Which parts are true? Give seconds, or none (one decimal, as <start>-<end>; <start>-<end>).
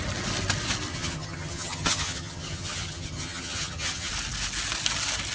0.0-0.9; 4.1-5.3